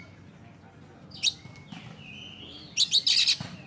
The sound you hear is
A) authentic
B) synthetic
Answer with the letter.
A